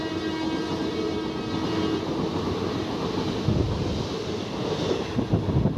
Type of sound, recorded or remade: recorded